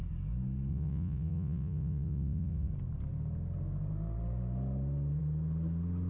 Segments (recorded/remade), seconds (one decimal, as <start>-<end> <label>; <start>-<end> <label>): 0.0-0.7 recorded; 0.7-2.7 remade; 2.7-6.1 recorded

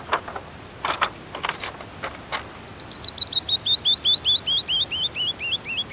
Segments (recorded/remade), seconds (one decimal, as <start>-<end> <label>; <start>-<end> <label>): 0.0-5.9 recorded